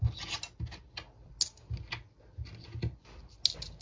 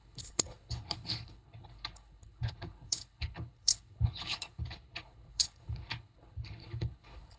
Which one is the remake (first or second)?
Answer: second